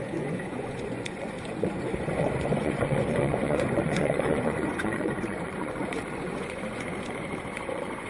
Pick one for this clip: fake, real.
fake